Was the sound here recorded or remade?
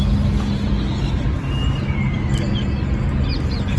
recorded